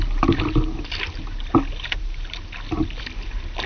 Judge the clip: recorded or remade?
recorded